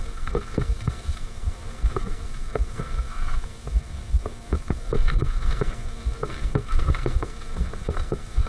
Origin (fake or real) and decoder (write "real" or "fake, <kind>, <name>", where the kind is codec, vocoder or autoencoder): fake, codec, SNAC